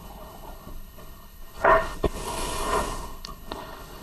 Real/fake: fake